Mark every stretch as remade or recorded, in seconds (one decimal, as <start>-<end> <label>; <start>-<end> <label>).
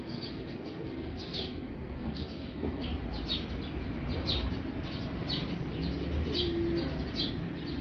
0.0-2.9 remade; 2.9-7.8 recorded